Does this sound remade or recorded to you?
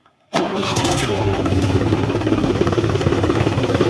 remade